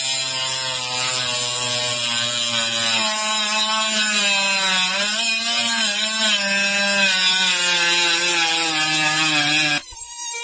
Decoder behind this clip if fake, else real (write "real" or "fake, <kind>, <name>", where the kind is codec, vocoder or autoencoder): real